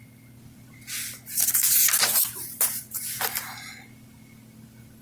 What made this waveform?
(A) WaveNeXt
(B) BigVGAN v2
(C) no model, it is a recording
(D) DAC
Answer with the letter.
C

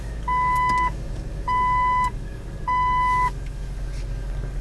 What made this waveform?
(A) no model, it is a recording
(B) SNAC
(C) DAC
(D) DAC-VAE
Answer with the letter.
C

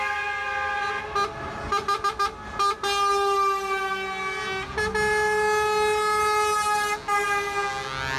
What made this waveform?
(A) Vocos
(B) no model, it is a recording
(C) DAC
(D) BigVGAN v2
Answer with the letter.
B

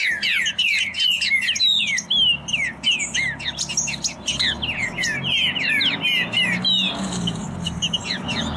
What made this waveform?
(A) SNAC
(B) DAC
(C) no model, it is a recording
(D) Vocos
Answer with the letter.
C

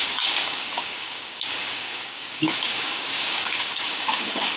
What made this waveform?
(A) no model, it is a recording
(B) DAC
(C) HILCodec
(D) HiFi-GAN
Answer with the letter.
B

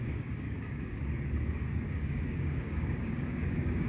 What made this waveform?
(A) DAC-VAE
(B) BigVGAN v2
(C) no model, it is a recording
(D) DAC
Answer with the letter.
D